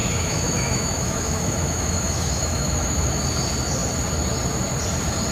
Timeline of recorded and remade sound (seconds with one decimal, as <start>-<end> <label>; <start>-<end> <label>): 0.0-3.2 remade; 3.2-5.3 recorded